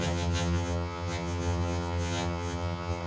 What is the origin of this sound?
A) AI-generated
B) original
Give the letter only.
A